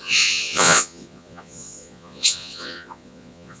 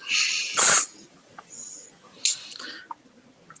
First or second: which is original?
second